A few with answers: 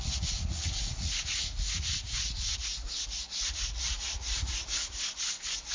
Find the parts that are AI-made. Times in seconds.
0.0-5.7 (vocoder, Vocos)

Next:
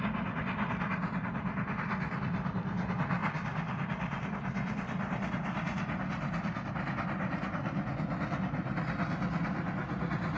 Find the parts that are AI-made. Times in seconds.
none

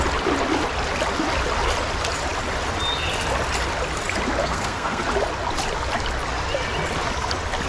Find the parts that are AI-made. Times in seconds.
4.4-5.0 (codec, SNAC)

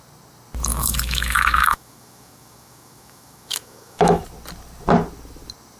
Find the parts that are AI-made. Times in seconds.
0.7-4.2 (autoencoder, DAC-VAE)